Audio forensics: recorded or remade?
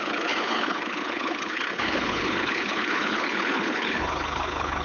remade